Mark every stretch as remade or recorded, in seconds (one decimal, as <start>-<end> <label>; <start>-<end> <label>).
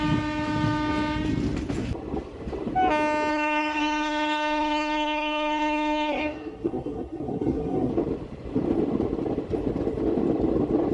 0.0-3.3 recorded; 3.3-7.9 remade; 7.9-10.9 recorded